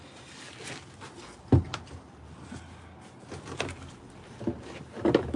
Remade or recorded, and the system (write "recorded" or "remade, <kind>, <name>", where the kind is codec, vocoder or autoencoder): recorded